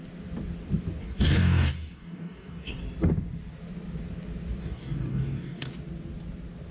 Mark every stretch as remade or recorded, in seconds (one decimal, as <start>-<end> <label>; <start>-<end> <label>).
0.0-1.0 recorded; 1.0-2.8 remade; 2.8-4.6 recorded; 4.6-5.7 remade; 5.7-6.7 recorded